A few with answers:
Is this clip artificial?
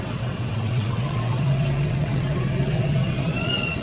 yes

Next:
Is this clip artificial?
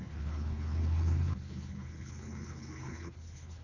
yes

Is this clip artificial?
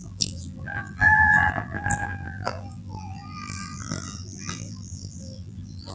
yes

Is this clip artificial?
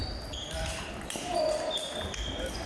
no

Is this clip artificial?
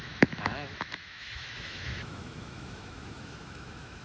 yes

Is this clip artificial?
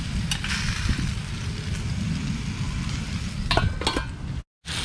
no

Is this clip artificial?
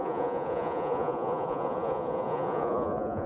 yes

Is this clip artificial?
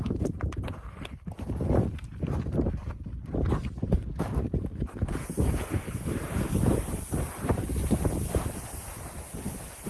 yes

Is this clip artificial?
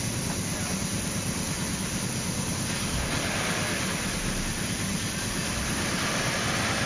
yes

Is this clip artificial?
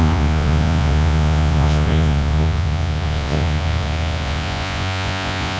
yes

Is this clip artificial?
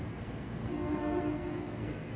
yes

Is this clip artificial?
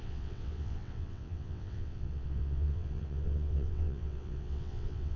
yes